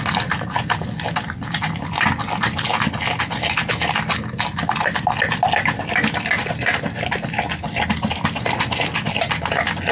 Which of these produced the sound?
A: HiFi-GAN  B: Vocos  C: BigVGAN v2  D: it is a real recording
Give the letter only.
D